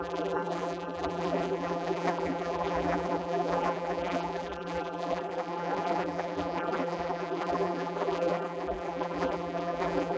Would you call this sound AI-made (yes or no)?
yes